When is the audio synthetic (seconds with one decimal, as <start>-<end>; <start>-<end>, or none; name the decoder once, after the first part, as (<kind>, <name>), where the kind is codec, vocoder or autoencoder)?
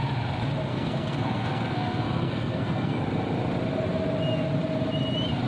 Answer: 0.7-3.0 (codec, SNAC)